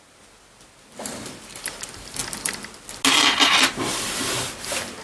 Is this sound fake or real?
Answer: real